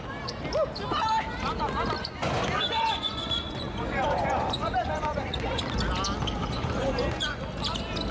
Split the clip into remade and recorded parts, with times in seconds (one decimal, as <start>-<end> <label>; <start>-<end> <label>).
0.0-2.0 recorded; 2.0-5.6 remade; 5.6-6.4 recorded; 6.4-7.4 remade; 7.4-8.1 recorded

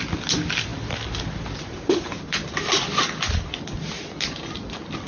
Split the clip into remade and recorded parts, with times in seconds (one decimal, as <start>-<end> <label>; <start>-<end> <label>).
0.0-5.1 recorded